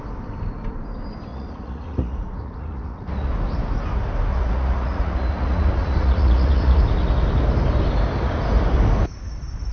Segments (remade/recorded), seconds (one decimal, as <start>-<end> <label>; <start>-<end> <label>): 0.0-1.3 recorded; 1.3-3.3 remade; 3.3-4.3 recorded; 4.3-6.8 remade; 6.8-9.7 recorded